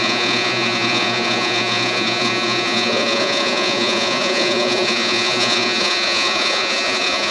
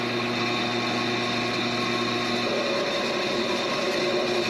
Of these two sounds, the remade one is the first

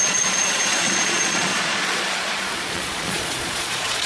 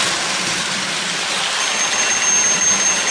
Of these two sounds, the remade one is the first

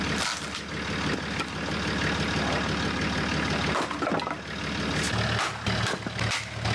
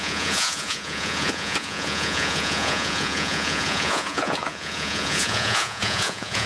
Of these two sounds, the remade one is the second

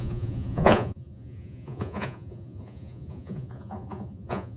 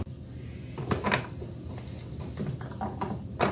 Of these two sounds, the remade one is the first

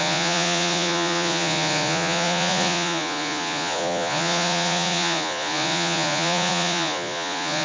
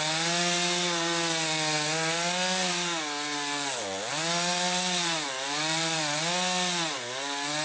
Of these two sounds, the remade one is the first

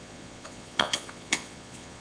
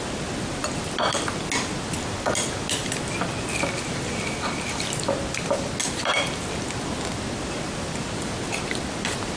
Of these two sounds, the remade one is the first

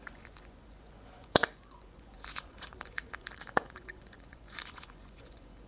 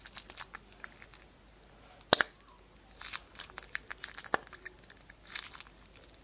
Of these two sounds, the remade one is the first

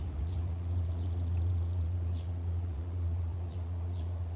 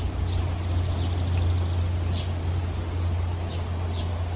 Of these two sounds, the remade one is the first